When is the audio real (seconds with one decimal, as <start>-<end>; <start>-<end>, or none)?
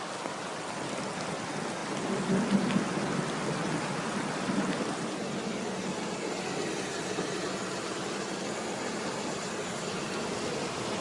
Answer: 0.0-11.0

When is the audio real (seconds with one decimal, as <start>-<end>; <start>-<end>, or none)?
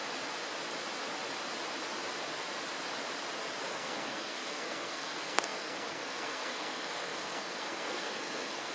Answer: 0.0-3.6